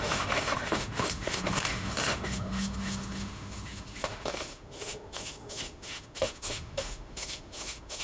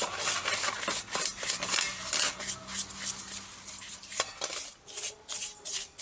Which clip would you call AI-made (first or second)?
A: first